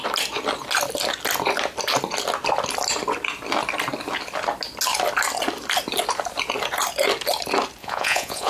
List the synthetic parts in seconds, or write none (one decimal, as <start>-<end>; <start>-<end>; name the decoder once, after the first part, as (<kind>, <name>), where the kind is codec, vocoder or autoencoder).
7.8-8.5 (vocoder, Vocos)